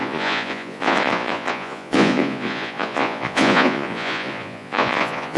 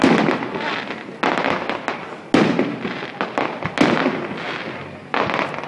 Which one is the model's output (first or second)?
first